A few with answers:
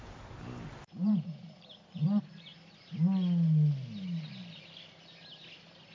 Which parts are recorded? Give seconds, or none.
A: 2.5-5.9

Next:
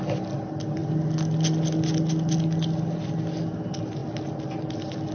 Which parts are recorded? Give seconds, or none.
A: 0.0-5.1

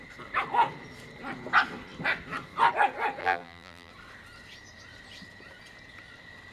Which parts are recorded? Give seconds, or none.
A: 0.0-3.2; 3.9-6.5

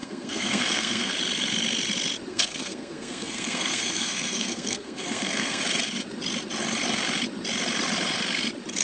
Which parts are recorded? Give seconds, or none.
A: 1.1-2.3; 5.6-8.8